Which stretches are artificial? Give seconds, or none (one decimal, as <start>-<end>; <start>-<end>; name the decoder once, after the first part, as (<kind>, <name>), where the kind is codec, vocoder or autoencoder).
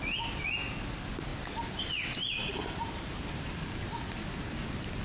2.4-3.7 (vocoder, BigVGAN v2)